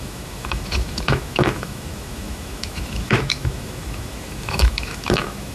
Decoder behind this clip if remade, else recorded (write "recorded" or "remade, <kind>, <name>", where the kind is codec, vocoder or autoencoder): remade, autoencoder, DAC-VAE